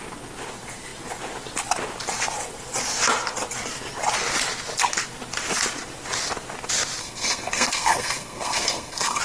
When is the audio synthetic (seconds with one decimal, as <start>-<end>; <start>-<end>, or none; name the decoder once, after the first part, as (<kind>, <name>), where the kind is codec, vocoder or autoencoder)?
7.0-9.2 (codec, SNAC)